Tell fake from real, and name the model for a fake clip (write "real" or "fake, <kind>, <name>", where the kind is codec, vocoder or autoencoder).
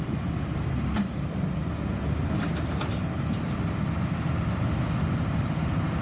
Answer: fake, vocoder, BigVGAN v2